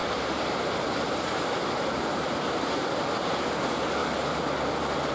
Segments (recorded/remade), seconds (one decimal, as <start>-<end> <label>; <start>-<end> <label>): 0.0-2.9 remade; 2.9-5.1 recorded